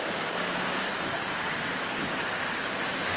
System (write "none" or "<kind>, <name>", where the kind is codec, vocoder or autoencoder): codec, DAC